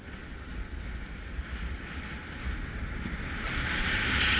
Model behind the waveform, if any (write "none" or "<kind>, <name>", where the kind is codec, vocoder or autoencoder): none